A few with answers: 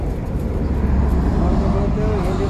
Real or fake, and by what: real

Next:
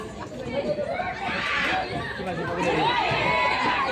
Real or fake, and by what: real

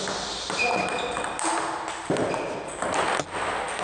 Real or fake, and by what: real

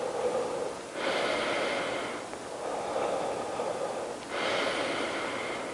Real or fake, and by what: real